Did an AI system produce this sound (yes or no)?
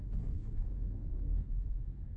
yes